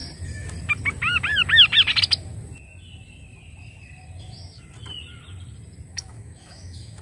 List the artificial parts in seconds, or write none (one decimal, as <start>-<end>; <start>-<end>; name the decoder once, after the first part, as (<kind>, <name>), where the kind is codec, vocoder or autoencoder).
5.9-7.0 (autoencoder, DAC-VAE)